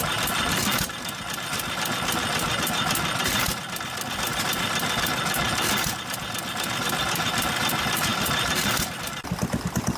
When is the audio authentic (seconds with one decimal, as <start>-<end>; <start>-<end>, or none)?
0.0-10.0